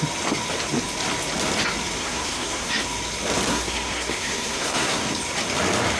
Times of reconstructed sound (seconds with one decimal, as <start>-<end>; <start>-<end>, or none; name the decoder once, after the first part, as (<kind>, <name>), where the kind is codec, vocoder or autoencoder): 2.0-2.7 (codec, SNAC); 3.5-5.0